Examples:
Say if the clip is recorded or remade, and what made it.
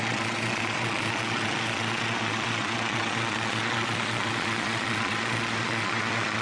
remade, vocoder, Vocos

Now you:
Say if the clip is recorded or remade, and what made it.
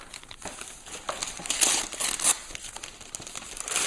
recorded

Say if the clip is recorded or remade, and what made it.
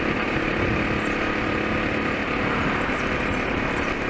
recorded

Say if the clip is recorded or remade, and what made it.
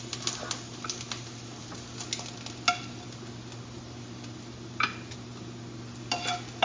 recorded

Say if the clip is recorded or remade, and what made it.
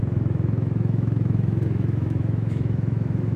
remade, autoencoder, DAC-VAE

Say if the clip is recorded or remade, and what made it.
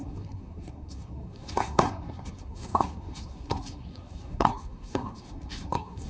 remade, codec, SNAC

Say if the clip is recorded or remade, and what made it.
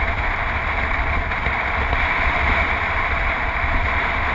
recorded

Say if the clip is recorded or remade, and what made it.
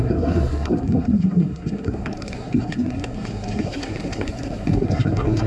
remade, codec, SNAC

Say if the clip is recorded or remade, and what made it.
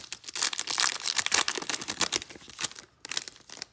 recorded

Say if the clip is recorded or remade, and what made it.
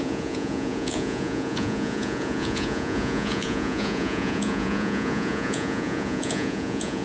remade, vocoder, Vocos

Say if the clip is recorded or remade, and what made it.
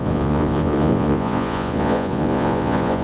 remade, vocoder, Vocos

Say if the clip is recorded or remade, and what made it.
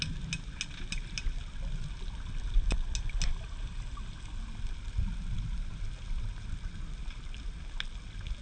recorded